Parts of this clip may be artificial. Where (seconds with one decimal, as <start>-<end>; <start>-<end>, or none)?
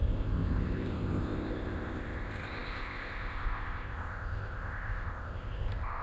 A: 0.0-6.0